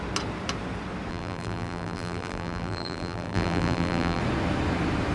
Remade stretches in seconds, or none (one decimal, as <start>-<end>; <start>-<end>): 1.1-4.2